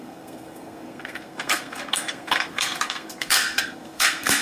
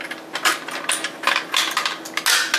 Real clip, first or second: second